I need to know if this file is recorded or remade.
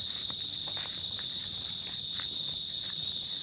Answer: remade